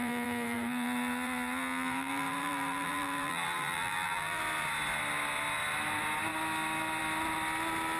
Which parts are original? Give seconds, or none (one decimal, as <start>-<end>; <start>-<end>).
4.4-8.0